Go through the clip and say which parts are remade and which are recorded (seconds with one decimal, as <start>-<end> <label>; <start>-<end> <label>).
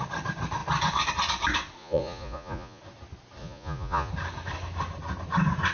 0.0-1.8 recorded; 1.8-2.8 remade; 2.8-3.4 recorded; 3.4-4.1 remade; 4.1-5.7 recorded